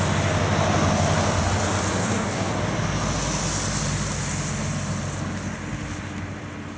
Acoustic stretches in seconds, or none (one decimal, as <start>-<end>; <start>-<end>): 0.0-2.0; 2.5-6.8